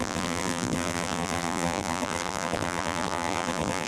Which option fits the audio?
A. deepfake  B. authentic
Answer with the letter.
A